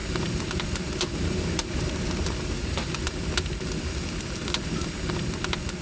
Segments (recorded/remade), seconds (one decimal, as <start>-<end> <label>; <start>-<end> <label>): 0.0-3.1 remade; 3.1-5.8 recorded